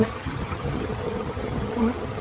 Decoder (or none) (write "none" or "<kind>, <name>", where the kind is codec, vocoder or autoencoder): vocoder, HiFi-GAN